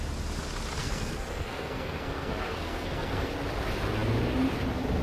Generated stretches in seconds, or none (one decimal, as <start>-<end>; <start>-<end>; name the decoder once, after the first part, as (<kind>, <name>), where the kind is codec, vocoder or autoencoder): 0.8-3.3 (codec, SNAC)